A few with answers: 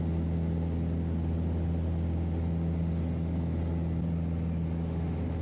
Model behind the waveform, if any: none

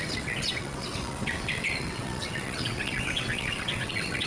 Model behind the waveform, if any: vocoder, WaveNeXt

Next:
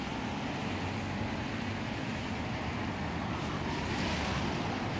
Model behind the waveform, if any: none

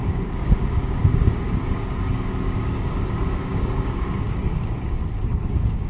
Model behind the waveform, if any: codec, DAC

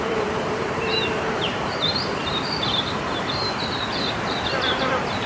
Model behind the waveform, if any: vocoder, BigVGAN v2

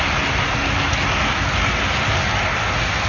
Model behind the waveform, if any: none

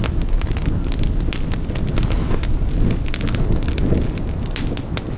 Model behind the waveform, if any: none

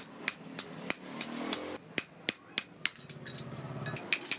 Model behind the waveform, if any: none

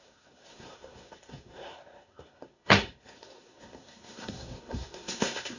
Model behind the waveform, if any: codec, SNAC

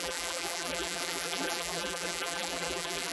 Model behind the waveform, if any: vocoder, BigVGAN v2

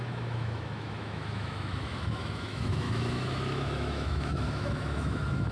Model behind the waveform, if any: autoencoder, DAC-VAE